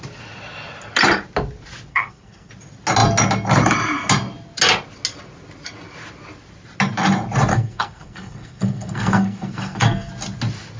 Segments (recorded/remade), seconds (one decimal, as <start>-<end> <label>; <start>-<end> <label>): 0.0-1.9 recorded; 1.9-2.5 remade; 2.5-7.5 recorded; 7.5-10.1 remade; 10.1-10.8 recorded